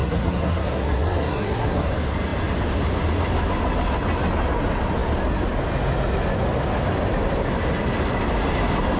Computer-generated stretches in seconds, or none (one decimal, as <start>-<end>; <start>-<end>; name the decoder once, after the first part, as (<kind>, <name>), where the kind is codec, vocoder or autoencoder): 0.0-1.9 (codec, SNAC)